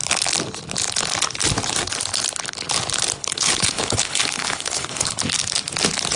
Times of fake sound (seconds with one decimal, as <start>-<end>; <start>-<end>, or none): 3.2-5.2